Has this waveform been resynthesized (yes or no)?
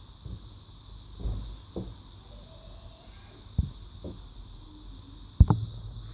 no